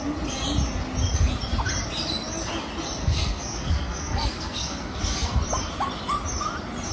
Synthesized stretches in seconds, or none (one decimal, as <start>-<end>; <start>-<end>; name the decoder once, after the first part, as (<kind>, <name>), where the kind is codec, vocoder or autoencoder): 3.0-5.4 (codec, SNAC)